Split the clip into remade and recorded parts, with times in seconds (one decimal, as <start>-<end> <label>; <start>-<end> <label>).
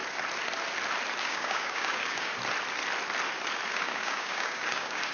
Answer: 0.0-1.2 recorded; 1.2-2.3 remade; 2.3-3.7 recorded; 3.7-5.1 remade